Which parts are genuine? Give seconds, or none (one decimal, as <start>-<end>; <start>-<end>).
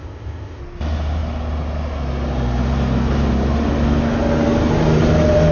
0.6-5.5